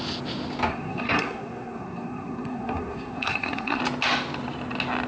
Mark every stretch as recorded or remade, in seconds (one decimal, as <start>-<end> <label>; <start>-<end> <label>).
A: 0.0-0.7 recorded; 0.7-3.8 remade; 3.8-5.1 recorded